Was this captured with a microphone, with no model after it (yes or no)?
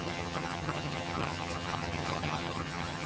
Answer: no